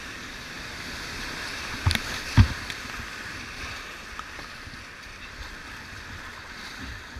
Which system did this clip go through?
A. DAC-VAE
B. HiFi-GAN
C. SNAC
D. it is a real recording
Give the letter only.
D